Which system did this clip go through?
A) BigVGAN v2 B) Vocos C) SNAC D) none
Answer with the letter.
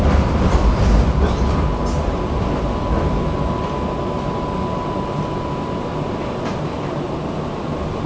D